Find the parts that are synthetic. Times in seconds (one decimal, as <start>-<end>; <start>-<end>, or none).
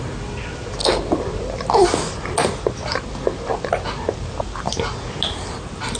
none